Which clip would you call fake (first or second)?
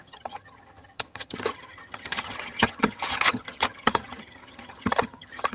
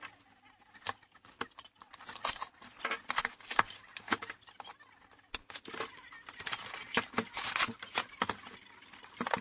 first